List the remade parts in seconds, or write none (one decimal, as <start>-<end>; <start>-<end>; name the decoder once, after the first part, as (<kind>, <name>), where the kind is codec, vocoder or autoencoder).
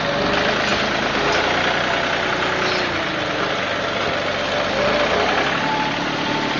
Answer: none